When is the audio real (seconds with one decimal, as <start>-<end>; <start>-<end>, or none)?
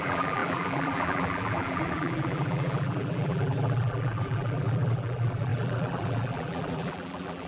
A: none